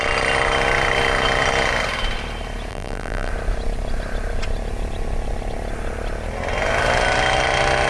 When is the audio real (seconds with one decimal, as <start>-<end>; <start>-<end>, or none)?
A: 0.0-2.7; 3.3-7.9